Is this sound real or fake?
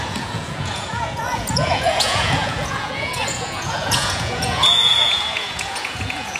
fake